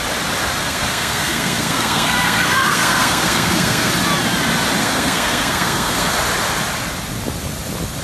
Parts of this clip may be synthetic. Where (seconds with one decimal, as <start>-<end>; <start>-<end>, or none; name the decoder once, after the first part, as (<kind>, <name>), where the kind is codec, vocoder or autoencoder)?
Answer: 0.6-3.9 (codec, SNAC); 4.8-6.1